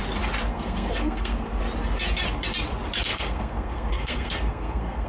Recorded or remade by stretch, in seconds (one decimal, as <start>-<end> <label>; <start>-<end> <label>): 0.0-0.5 recorded; 0.5-1.6 remade; 1.6-3.1 recorded; 3.1-5.1 remade